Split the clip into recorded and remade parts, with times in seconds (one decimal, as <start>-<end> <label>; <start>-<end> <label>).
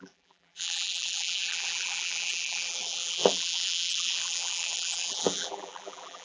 0.0-6.2 remade